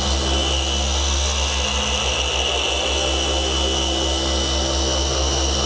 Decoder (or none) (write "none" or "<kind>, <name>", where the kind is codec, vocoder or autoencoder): none